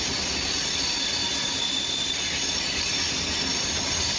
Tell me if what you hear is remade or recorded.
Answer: recorded